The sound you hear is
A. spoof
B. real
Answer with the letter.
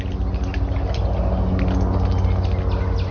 B